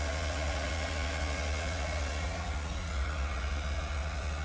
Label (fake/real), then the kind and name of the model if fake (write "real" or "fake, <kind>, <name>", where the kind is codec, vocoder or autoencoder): fake, vocoder, Vocos